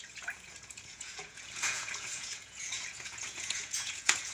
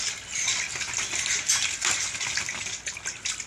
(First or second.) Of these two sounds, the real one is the second